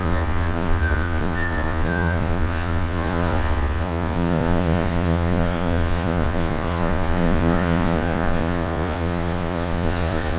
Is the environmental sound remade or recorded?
remade